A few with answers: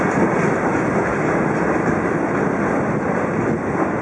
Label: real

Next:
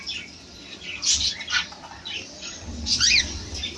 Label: fake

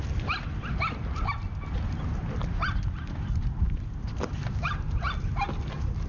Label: real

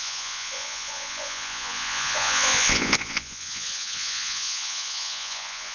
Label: fake